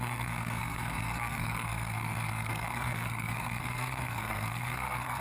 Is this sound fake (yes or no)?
yes